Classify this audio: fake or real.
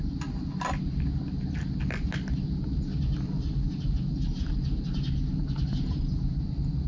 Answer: real